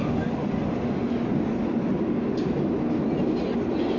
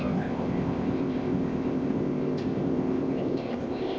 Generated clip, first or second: second